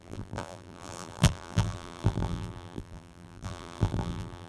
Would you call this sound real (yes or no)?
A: no